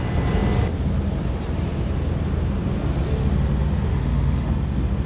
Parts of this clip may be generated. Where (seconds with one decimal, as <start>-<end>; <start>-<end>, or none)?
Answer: 3.9-4.5